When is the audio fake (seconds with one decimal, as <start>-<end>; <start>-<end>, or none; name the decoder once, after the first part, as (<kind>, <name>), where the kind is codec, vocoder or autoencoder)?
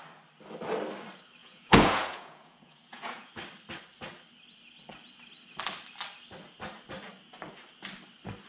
1.4-3.3 (vocoder, Vocos)